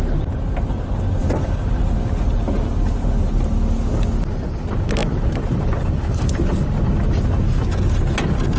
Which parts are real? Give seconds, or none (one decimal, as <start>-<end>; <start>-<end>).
0.0-8.6